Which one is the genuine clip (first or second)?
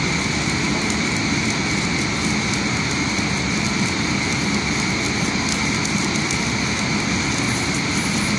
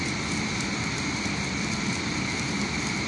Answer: first